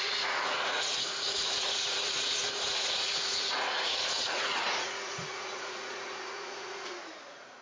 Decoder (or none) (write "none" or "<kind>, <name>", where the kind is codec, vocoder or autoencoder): vocoder, Vocos